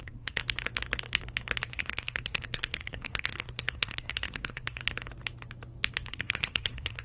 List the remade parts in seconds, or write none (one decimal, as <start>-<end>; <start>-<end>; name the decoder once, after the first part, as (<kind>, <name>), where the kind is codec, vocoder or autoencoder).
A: 0.0-0.4 (codec, SNAC); 1.6-4.8; 6.1-7.0